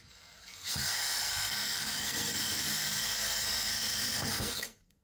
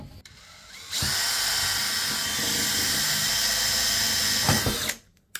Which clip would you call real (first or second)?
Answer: second